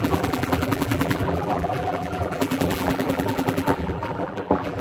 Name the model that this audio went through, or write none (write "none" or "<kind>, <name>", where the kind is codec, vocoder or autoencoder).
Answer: vocoder, BigVGAN v2